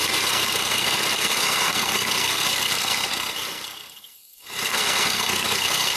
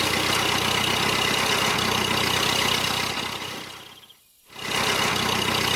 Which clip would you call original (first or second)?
second